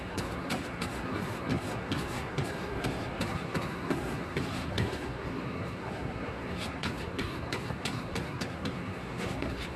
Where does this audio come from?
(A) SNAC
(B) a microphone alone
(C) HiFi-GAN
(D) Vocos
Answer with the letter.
A